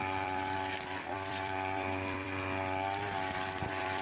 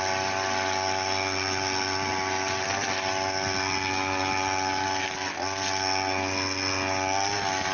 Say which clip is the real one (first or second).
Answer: second